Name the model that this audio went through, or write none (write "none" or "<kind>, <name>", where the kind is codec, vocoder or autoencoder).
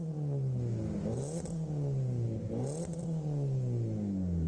none